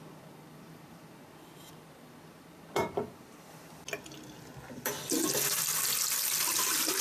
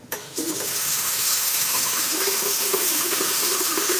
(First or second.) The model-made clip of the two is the second